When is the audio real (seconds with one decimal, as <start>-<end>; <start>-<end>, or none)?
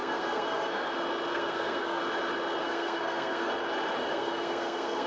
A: 0.9-1.3; 2.0-2.6; 3.5-4.1